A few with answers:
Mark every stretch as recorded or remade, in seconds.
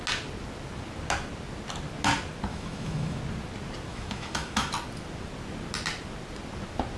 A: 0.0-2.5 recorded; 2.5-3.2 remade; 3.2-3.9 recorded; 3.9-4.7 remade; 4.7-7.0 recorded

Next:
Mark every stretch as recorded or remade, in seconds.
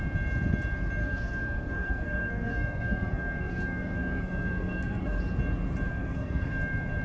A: 0.0-1.0 recorded; 1.0-5.2 remade; 5.2-5.9 recorded; 5.9-6.5 remade; 6.5-7.0 recorded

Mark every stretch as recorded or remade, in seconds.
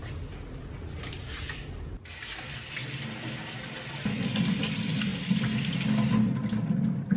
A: 0.0-7.2 recorded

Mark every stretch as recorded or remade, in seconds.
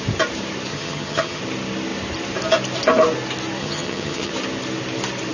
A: 0.0-0.7 recorded; 0.7-1.4 remade; 1.4-3.6 recorded; 3.6-4.3 remade; 4.3-5.3 recorded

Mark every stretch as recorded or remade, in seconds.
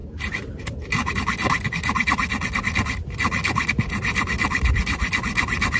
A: 0.0-1.1 remade; 1.1-5.8 recorded